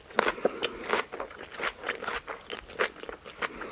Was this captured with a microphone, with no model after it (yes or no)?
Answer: yes